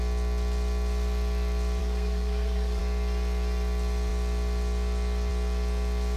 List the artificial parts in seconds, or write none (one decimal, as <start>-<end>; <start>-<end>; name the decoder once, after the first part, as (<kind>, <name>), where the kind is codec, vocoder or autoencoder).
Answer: 1.8-2.8 (codec, SNAC)